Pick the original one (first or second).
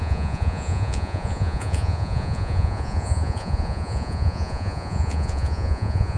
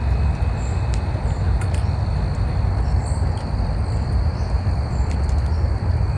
second